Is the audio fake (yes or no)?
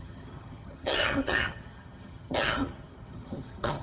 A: yes